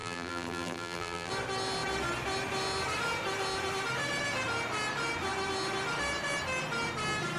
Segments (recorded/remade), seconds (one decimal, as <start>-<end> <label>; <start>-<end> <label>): 0.0-1.3 remade; 1.3-7.4 recorded